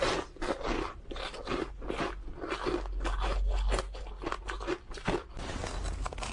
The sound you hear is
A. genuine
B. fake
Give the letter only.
A